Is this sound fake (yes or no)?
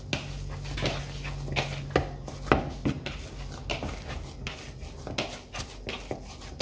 no